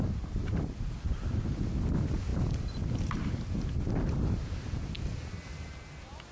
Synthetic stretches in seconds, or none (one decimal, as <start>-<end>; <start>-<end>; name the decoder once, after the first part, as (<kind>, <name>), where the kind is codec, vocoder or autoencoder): none